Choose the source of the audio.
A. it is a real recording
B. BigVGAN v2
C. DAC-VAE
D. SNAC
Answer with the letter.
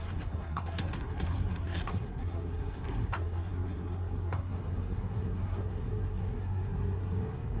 D